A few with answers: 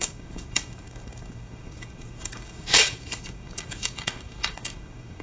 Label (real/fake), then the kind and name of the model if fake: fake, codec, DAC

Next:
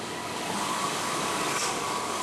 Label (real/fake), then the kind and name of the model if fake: fake, codec, DAC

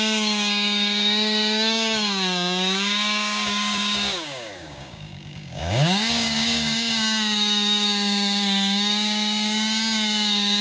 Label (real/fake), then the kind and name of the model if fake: fake, codec, DAC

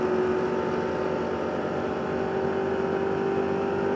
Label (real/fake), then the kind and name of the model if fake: real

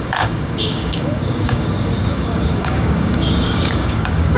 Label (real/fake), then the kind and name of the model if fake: fake, codec, DAC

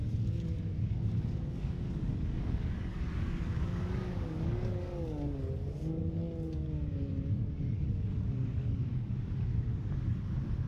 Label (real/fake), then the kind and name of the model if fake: fake, codec, DAC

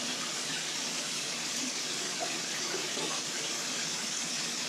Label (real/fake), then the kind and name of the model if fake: fake, codec, DAC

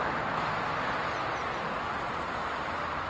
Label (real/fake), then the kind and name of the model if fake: real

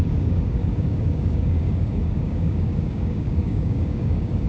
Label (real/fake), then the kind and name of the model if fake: fake, codec, DAC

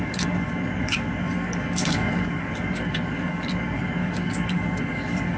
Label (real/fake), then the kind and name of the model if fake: fake, codec, DAC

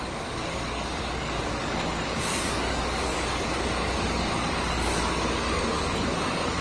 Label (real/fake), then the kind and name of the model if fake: fake, codec, DAC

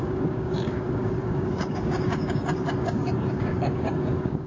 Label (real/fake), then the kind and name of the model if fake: fake, codec, DAC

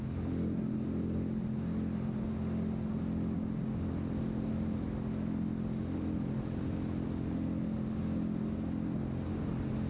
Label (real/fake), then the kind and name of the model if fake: real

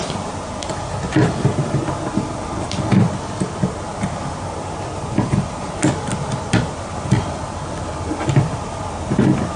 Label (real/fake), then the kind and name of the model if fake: real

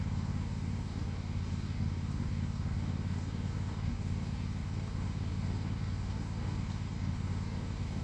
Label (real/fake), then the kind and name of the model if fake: fake, codec, DAC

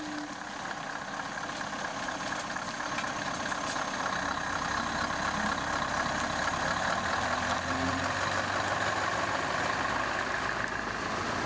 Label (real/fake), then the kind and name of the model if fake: real